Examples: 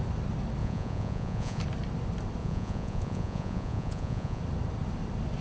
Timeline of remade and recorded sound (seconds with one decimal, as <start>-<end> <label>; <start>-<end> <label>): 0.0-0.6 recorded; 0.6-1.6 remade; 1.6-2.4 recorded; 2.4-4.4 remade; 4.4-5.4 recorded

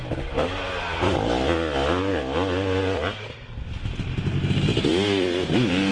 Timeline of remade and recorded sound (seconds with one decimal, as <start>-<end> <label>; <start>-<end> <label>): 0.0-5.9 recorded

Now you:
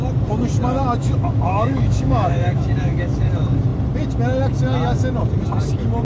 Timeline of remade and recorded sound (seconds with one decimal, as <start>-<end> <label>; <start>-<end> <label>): 0.0-1.0 recorded; 1.0-3.3 remade; 3.3-6.0 recorded

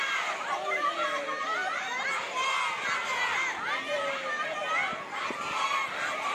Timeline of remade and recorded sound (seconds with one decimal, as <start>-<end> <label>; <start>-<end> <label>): 0.0-6.3 recorded

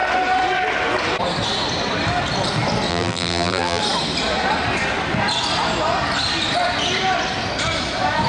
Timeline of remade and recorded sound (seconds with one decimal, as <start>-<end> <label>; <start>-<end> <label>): 0.0-2.9 recorded; 2.9-3.8 remade; 3.8-8.3 recorded

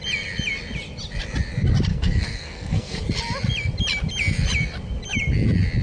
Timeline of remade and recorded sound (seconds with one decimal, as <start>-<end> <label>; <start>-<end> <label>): 0.0-1.9 recorded; 1.9-3.0 remade; 3.0-5.8 recorded

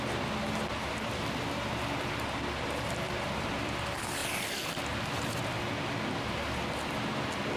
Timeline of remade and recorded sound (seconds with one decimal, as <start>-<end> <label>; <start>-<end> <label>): 0.0-4.2 remade; 4.2-6.1 recorded; 6.1-7.6 remade